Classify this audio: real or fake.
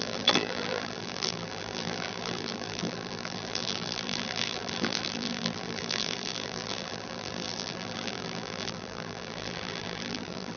fake